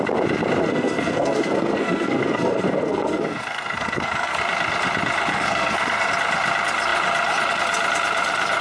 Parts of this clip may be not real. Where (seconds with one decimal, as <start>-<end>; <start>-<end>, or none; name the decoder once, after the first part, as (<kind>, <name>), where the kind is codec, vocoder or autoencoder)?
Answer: 0.6-4.4 (codec, SNAC); 5.3-6.1